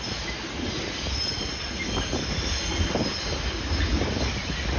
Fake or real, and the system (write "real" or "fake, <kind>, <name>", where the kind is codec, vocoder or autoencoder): real